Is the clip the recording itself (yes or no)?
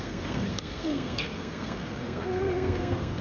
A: no